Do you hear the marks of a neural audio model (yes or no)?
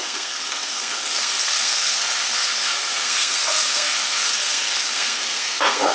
yes